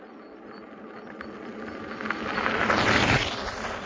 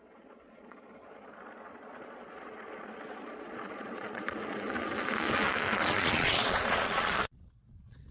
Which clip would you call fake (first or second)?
second